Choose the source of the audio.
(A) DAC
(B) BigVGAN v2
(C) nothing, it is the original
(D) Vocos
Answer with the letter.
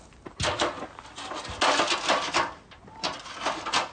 C